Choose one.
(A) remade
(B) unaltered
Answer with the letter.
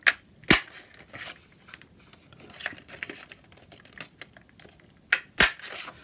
B